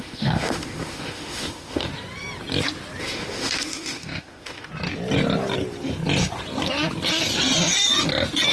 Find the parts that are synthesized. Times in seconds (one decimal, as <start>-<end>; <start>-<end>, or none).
0.0-1.9; 3.0-4.7